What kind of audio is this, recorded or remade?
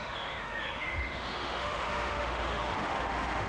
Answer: remade